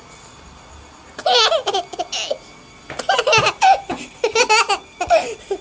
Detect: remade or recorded recorded